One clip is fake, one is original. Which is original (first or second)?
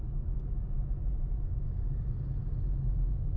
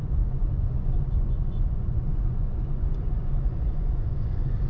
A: first